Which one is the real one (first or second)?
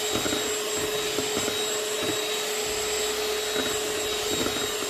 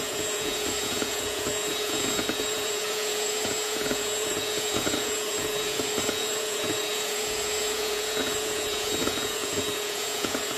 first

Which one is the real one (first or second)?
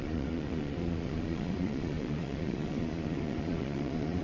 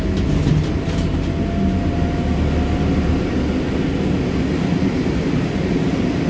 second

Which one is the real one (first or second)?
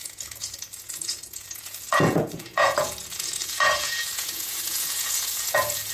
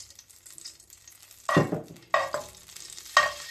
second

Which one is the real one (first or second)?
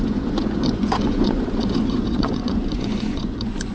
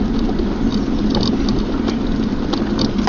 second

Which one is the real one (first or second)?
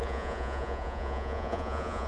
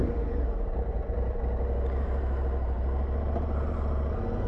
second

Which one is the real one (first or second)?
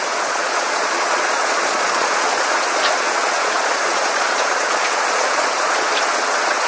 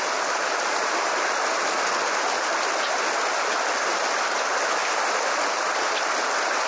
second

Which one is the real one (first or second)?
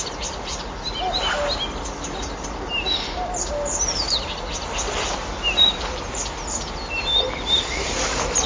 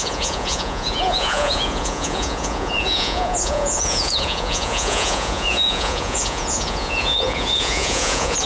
first